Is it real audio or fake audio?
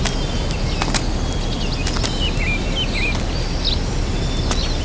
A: real